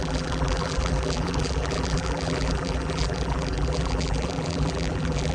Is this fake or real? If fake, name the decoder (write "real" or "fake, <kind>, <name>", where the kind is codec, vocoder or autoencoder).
fake, vocoder, BigVGAN v2